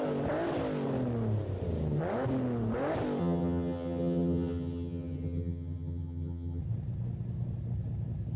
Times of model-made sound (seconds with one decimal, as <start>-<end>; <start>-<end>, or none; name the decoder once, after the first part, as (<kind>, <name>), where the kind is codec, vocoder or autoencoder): 3.2-6.6 (vocoder, HiFi-GAN)